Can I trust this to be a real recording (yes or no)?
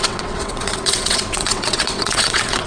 no